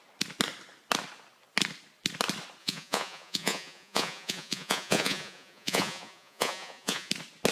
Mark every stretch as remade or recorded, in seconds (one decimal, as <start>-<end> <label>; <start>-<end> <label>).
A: 0.0-2.6 recorded; 2.6-7.1 remade; 7.1-7.5 recorded